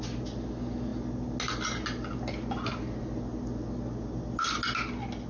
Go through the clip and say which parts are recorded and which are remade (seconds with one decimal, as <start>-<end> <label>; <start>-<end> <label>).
0.0-5.3 recorded